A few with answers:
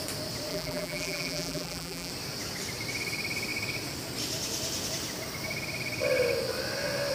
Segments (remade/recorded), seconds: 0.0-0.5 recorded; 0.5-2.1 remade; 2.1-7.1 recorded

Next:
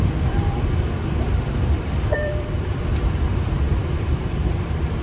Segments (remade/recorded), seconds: 0.0-5.0 remade

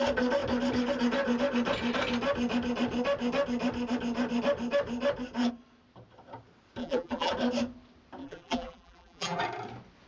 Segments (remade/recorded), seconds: 0.0-6.8 recorded; 6.8-7.3 remade; 7.3-8.2 recorded; 8.2-9.4 remade; 9.4-10.1 recorded

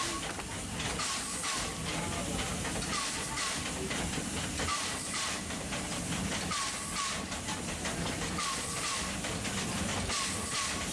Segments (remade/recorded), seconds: 0.0-4.7 recorded; 4.7-6.1 remade; 6.1-10.9 recorded

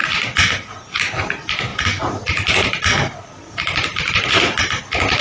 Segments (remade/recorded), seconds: 0.0-1.7 recorded; 1.7-4.8 remade; 4.8-5.2 recorded

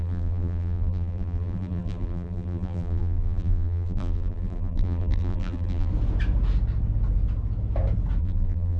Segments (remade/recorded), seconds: 0.0-5.9 remade; 5.9-8.2 recorded; 8.2-8.8 remade